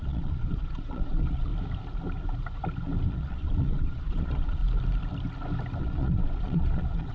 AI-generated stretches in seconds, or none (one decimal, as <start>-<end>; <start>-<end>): 0.0-1.5; 3.1-4.6; 5.8-7.1